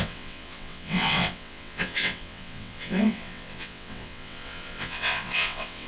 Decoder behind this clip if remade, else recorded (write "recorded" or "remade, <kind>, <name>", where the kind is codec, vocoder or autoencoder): remade, vocoder, WaveNeXt